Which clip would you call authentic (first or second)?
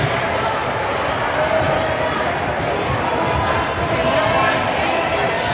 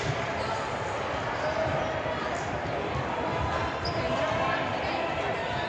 first